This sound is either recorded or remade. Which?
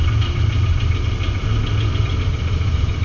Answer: recorded